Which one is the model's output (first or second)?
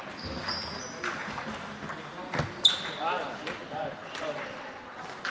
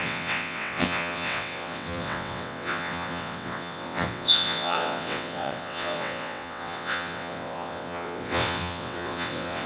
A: second